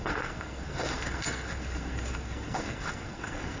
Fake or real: fake